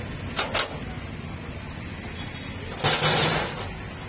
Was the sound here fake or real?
real